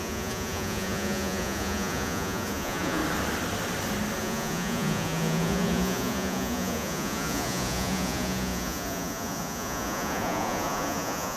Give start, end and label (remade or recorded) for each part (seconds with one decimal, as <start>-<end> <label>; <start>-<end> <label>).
0.0-3.0 remade; 3.0-4.2 recorded; 4.2-11.4 remade